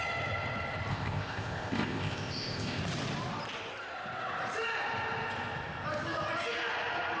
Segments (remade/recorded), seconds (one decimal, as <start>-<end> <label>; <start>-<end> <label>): 0.0-0.9 recorded; 0.9-2.8 remade; 2.8-7.2 recorded